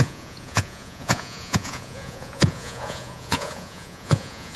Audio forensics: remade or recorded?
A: remade